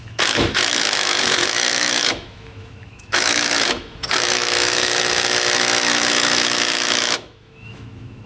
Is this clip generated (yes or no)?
yes